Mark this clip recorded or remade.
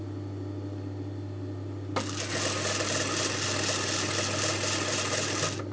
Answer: recorded